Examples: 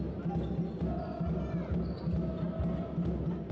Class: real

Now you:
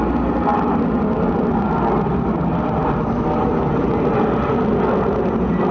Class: real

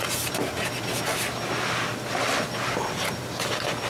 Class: real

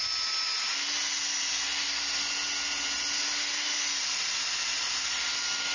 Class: real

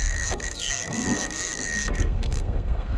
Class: fake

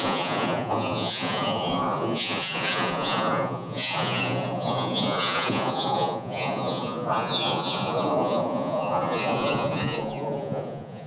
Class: fake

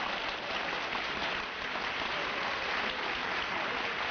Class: real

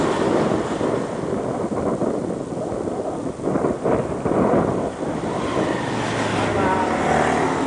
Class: real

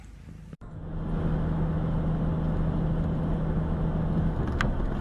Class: real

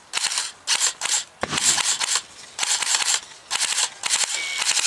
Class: real